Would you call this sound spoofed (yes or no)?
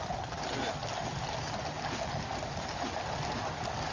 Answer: no